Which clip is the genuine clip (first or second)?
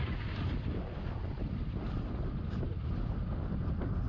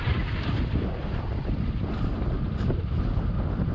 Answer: first